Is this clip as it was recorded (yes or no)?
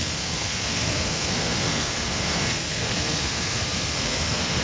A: no